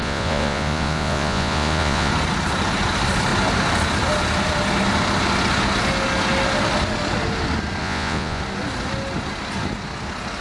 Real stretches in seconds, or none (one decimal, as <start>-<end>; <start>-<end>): 2.1-7.8; 8.4-10.4